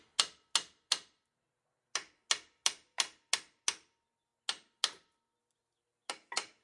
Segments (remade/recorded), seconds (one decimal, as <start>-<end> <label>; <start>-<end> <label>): 0.0-6.6 recorded